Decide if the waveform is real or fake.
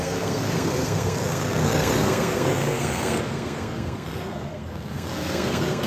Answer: fake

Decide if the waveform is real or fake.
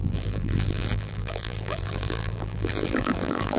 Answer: fake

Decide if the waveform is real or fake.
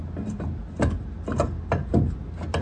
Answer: real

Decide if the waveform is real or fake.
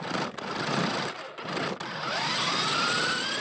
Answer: real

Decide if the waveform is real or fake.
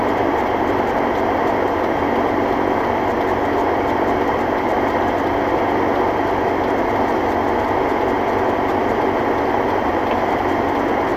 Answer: real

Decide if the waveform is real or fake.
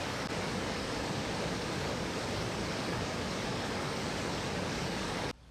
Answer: fake